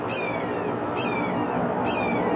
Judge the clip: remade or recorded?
recorded